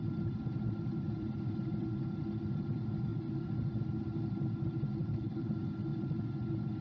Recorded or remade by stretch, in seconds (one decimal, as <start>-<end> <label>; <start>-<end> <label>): 0.0-5.0 recorded; 5.0-5.5 remade; 5.5-6.8 recorded